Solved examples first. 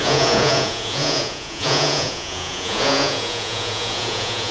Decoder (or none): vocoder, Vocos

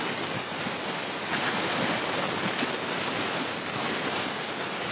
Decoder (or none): none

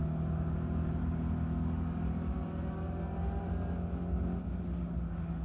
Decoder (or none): none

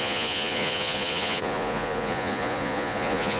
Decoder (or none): vocoder, Vocos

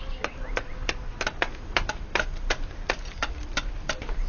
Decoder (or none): none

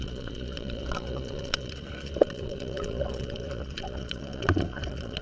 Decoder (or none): vocoder, Vocos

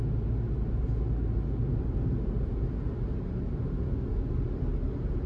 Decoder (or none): none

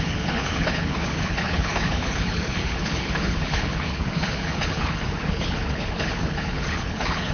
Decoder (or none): codec, HILCodec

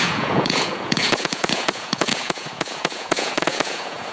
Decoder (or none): vocoder, Vocos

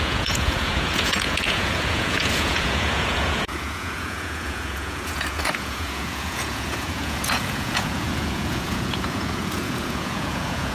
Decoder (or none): vocoder, Vocos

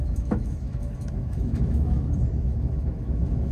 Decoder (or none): autoencoder, DAC-VAE